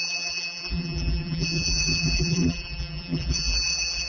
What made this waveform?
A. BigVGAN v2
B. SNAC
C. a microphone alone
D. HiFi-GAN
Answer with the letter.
A